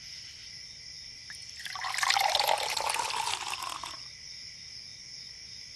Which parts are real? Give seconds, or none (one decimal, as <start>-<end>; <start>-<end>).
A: 0.0-5.8